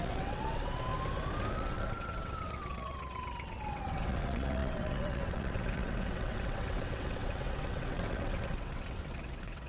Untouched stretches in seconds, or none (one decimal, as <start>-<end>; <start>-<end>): 0.9-1.5